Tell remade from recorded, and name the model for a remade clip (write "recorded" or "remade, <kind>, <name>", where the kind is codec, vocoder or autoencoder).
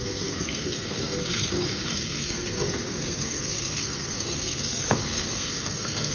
remade, codec, SNAC